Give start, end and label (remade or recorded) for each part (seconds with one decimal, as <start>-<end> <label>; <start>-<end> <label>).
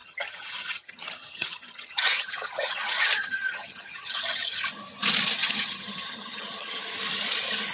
0.0-4.6 remade; 4.6-5.4 recorded; 5.4-6.8 remade; 6.8-7.7 recorded